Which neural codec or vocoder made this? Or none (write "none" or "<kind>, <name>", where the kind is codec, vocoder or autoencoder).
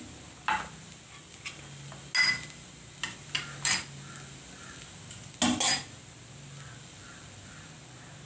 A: none